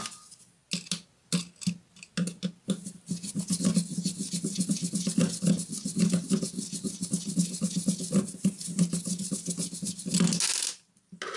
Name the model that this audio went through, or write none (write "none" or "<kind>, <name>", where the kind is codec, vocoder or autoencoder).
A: none